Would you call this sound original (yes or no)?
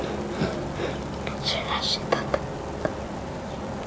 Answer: yes